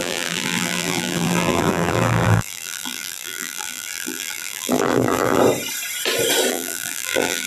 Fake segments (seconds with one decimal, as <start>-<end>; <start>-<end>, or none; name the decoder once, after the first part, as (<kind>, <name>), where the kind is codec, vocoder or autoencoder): 0.0-5.4 (vocoder, BigVGAN v2); 6.5-7.5